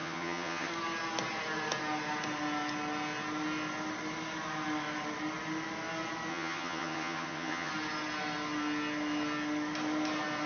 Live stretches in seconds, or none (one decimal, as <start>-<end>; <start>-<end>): 0.7-6.3; 7.7-10.5